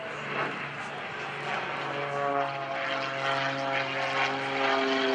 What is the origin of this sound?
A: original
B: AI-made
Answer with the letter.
A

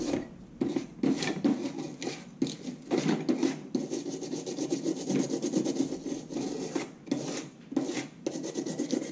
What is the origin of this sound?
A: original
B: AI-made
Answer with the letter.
A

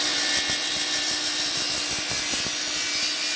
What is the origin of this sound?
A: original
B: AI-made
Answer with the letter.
A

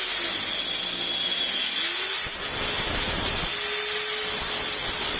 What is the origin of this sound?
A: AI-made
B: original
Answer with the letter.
B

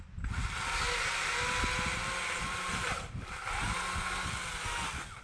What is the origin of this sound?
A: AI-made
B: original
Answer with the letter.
B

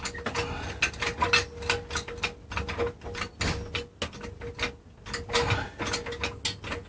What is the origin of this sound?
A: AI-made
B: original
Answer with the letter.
B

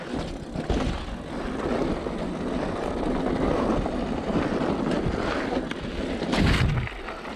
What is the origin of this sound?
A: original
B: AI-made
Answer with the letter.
A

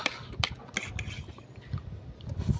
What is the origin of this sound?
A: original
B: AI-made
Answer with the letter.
A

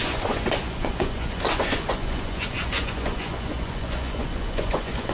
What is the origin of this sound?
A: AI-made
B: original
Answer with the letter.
A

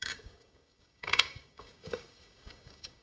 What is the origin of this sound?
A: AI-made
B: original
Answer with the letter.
A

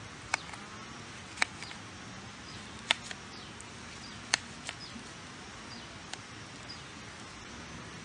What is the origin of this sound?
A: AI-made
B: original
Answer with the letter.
B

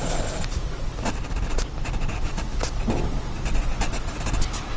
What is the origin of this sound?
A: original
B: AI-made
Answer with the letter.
A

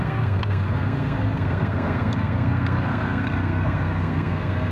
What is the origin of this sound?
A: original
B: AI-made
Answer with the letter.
B